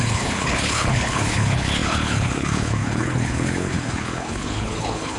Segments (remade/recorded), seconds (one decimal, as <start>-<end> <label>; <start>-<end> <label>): 0.0-5.2 remade